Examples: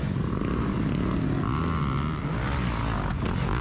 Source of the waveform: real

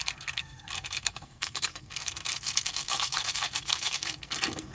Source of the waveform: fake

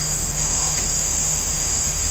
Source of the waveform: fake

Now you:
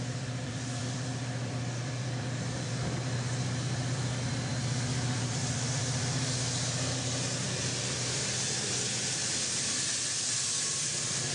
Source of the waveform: fake